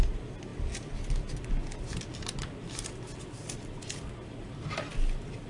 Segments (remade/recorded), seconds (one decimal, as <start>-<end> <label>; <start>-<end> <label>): 0.0-5.5 recorded